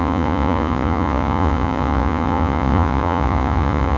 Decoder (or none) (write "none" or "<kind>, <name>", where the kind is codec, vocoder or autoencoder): vocoder, Vocos